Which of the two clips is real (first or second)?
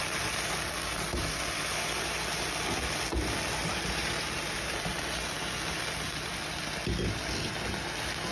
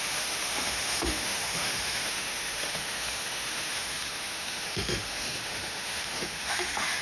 first